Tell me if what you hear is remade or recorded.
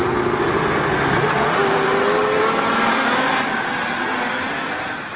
recorded